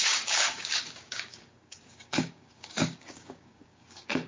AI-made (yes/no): yes